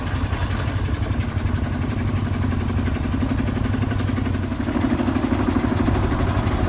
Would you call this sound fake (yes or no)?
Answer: no